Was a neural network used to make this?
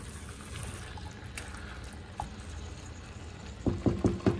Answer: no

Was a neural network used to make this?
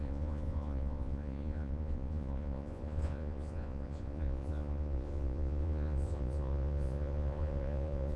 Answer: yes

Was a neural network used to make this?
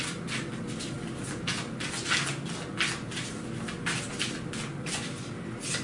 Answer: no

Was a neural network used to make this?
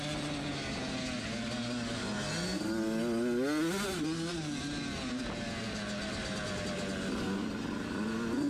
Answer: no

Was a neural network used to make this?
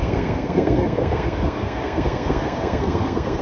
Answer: yes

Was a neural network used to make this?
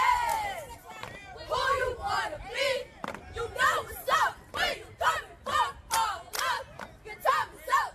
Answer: no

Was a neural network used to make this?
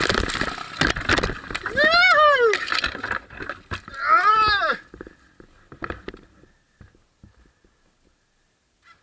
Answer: no